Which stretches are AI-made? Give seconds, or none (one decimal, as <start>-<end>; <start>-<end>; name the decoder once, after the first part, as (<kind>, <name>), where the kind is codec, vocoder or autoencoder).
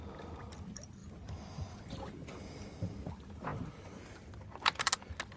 none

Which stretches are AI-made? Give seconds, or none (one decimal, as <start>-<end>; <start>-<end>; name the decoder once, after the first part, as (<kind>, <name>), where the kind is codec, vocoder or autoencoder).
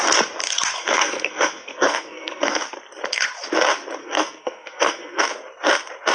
0.8-2.6 (codec, SNAC); 4.0-5.2